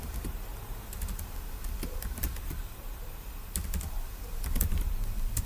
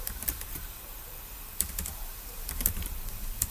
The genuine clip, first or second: first